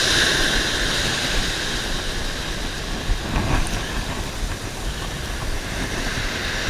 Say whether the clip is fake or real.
real